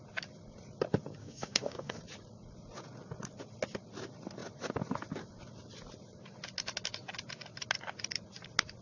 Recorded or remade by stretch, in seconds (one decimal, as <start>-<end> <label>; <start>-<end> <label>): 0.0-1.2 recorded; 1.2-2.0 remade; 2.0-8.8 recorded